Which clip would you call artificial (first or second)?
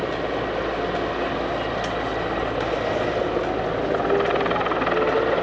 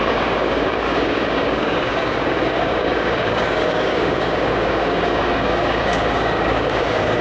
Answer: second